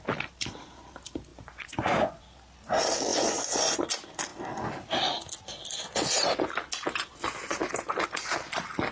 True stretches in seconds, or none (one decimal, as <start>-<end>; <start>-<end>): 0.0-1.3; 2.2-3.1; 3.8-8.9